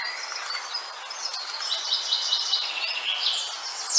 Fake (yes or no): no